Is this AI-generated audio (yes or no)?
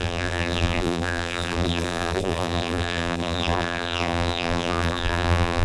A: yes